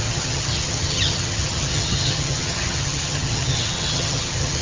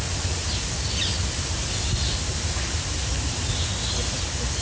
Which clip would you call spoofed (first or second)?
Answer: first